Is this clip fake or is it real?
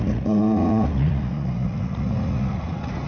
fake